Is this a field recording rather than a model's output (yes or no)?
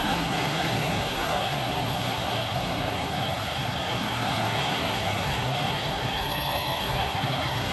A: no